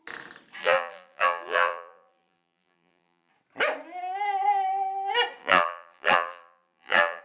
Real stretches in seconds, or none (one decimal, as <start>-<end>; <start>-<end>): 0.0-0.6; 3.3-5.4